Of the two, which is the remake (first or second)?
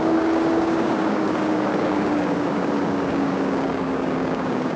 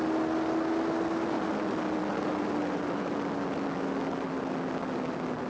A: first